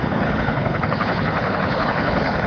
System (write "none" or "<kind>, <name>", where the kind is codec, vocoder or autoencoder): codec, HILCodec